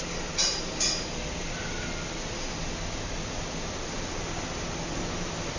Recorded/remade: recorded